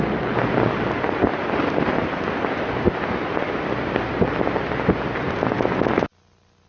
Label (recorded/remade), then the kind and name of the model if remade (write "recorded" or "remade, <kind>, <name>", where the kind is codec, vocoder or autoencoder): recorded